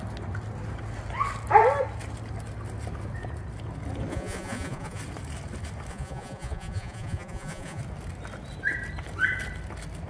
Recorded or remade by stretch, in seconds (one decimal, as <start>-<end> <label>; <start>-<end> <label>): 0.0-4.1 recorded; 4.1-5.0 remade; 5.0-5.9 recorded; 5.9-7.8 remade; 7.8-10.1 recorded